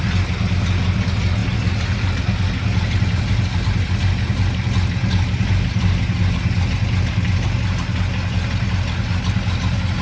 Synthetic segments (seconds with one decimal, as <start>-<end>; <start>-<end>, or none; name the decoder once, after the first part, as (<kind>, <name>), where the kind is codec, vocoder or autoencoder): none